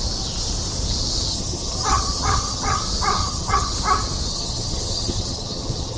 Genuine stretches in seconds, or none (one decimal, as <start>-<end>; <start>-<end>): 0.0-1.3; 2.8-3.2; 3.7-4.3